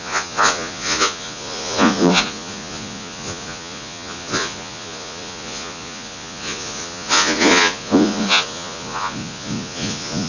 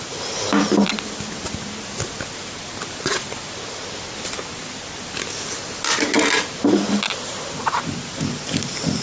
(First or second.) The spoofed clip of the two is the first